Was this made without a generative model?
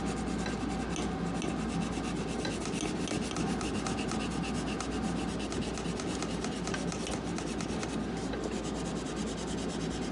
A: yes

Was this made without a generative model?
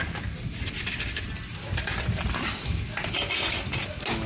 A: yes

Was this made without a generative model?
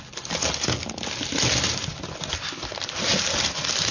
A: yes